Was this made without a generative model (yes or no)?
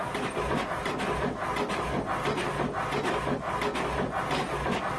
yes